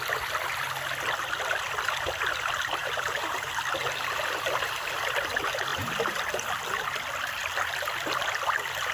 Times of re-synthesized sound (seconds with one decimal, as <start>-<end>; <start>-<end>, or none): 2.8-3.5; 5.7-6.2